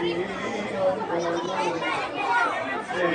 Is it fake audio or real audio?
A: fake